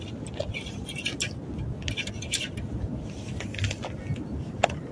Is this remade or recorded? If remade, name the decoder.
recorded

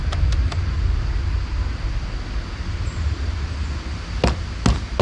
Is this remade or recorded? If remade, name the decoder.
recorded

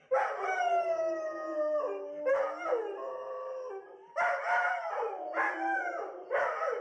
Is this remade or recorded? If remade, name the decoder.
recorded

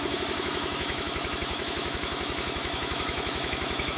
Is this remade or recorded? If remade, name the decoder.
remade, autoencoder, DAC-VAE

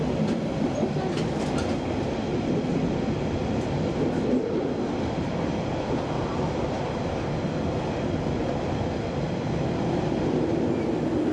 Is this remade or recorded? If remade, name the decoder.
recorded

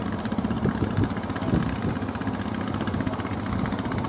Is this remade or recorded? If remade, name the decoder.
recorded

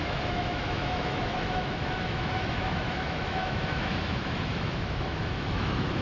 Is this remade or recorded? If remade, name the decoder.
remade, autoencoder, DAC-VAE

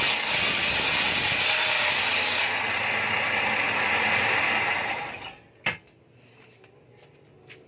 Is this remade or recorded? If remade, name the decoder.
recorded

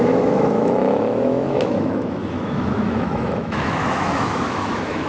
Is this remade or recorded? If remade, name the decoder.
remade, autoencoder, DAC-VAE